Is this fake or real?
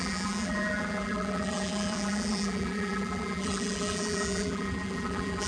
fake